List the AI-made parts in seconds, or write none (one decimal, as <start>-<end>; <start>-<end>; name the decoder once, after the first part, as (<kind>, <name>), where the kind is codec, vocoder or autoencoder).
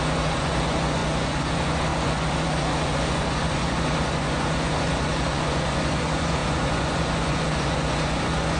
0.0-8.6 (vocoder, Vocos)